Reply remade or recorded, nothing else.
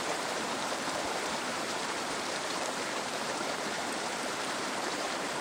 remade